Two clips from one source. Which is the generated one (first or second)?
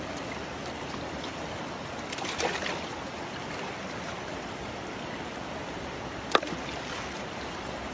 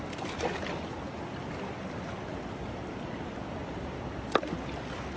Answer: first